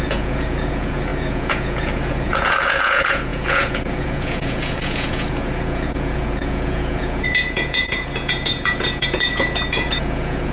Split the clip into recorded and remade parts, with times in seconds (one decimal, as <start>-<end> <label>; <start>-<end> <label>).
0.0-10.5 remade

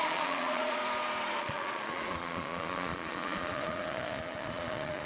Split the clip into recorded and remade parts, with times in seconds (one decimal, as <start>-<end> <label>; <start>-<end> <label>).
0.0-0.8 remade; 0.8-1.4 recorded; 1.4-5.1 remade

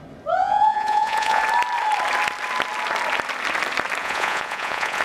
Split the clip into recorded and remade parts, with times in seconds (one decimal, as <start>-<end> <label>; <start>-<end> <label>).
0.0-0.4 recorded; 0.4-1.4 remade; 1.4-4.0 recorded; 4.0-5.0 remade

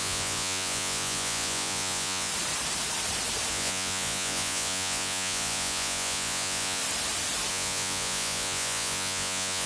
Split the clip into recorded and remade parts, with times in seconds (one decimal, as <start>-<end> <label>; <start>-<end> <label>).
0.0-2.3 remade; 2.3-3.5 recorded; 3.5-6.8 remade; 6.8-7.5 recorded; 7.5-9.7 remade